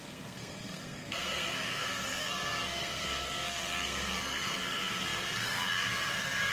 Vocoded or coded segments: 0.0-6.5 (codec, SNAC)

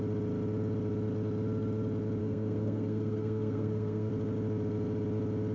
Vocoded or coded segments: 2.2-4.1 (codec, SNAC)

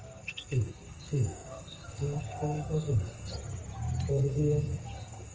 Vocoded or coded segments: 0.0-3.3 (codec, SNAC); 4.1-5.3

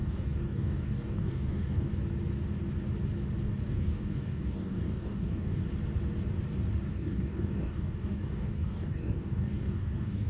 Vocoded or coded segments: 0.0-1.9 (codec, DAC); 3.7-5.6; 6.9-10.3